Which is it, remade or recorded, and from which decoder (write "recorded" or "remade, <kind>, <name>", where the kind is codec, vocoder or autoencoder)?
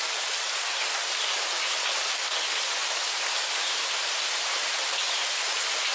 recorded